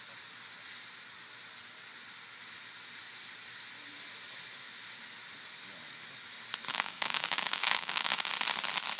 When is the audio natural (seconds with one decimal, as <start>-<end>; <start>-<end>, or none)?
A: 0.0-6.7; 8.3-9.0